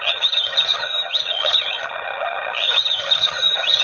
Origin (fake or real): fake